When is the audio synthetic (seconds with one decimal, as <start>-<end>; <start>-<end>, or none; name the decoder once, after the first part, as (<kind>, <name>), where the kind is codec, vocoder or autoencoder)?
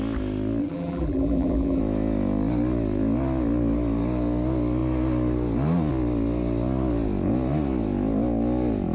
0.6-1.8 (vocoder, BigVGAN v2)